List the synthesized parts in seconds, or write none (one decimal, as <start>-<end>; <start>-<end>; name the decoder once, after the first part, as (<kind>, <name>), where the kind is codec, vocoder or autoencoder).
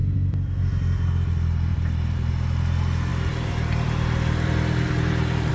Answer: 1.7-2.3 (vocoder, BigVGAN v2); 3.1-5.5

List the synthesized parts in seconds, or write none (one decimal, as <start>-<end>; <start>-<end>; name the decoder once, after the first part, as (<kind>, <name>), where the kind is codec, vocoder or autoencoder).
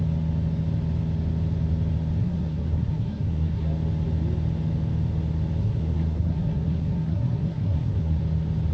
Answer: 2.2-3.7 (codec, SNAC); 5.6-8.2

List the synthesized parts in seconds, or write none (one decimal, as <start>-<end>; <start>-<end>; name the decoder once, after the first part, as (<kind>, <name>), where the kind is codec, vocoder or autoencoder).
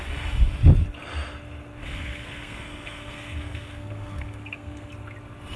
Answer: 1.8-4.9 (codec, SNAC)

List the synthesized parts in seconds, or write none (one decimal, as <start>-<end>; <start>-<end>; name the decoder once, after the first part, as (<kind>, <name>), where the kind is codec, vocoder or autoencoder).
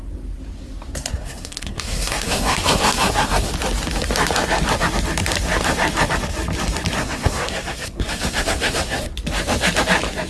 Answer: 1.1-3.5 (codec, SNAC); 7.0-9.1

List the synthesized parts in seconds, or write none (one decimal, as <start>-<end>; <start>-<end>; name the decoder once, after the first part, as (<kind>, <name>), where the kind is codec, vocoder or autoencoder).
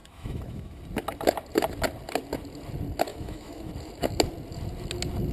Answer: 0.0-0.8 (autoencoder, DAC-VAE); 3.1-3.7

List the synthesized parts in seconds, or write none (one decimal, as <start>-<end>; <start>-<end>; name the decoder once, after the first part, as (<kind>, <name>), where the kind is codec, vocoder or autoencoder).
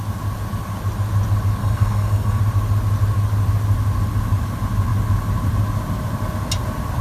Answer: 1.6-2.4 (codec, SNAC)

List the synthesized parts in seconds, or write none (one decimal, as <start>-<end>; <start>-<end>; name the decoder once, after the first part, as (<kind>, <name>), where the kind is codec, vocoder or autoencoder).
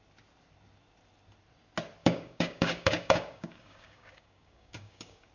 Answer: 2.0-5.3 (codec, DAC)